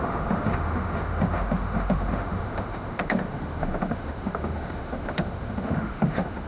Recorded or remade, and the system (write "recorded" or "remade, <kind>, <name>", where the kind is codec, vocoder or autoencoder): remade, autoencoder, DAC-VAE